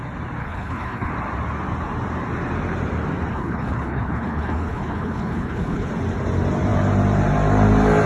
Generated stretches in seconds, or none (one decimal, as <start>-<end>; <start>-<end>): 0.4-1.1; 3.3-5.9